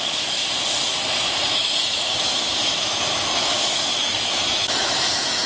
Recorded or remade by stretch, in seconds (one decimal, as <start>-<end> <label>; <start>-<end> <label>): 0.0-0.4 remade; 0.4-1.2 recorded; 1.2-5.5 remade